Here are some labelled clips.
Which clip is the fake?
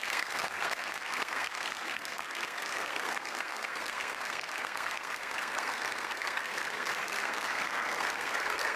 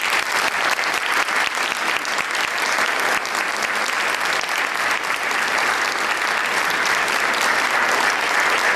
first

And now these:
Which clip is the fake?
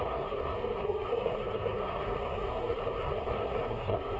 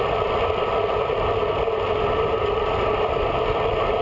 first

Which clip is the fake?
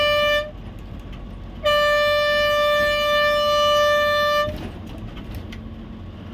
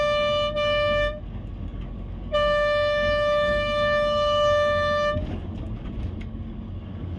second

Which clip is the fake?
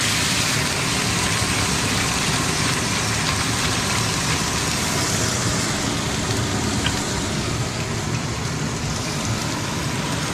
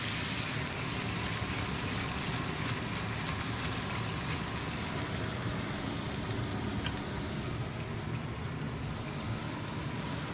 first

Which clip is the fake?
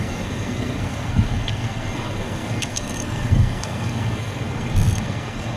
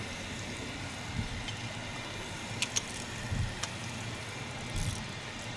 first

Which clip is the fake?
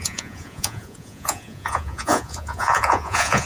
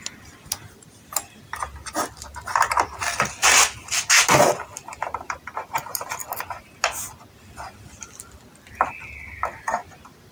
first